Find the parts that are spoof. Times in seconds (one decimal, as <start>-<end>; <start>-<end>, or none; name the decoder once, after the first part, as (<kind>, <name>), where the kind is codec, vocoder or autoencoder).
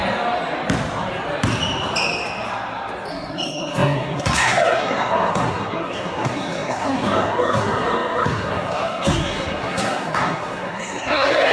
3.1-11.5 (codec, SNAC)